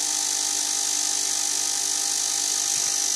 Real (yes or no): yes